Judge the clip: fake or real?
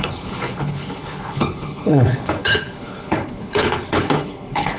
fake